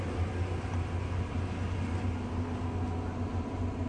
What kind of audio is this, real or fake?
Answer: real